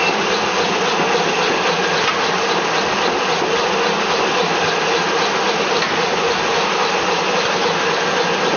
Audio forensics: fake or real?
real